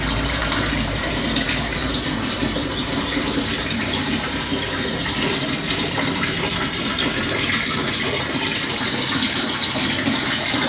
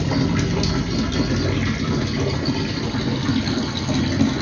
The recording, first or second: second